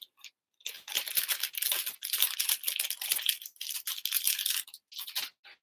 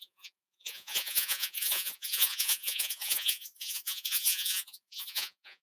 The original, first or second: first